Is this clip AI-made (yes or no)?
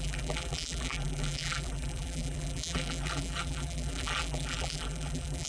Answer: yes